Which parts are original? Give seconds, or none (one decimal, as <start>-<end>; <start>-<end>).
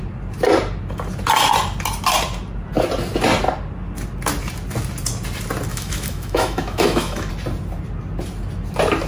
0.0-5.7; 7.3-9.1